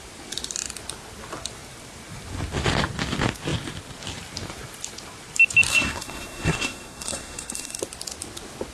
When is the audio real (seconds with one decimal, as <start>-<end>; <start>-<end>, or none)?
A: 0.0-5.7; 7.8-8.7